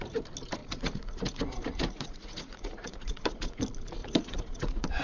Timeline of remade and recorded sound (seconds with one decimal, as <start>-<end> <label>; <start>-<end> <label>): 0.0-0.6 recorded; 0.6-3.6 remade; 3.6-4.0 recorded; 4.0-5.0 remade